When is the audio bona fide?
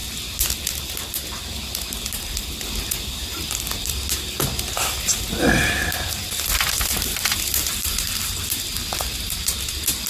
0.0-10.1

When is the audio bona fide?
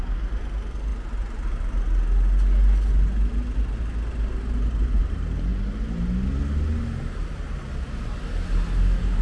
0.0-9.2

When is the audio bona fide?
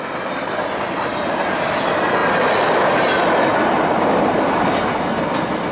0.0-5.7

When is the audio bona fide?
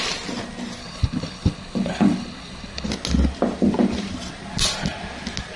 0.0-0.8; 2.9-5.6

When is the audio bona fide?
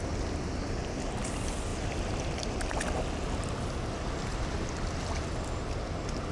0.0-6.3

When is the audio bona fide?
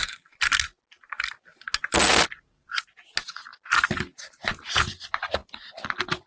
0.0-6.3